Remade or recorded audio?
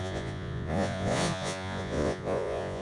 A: remade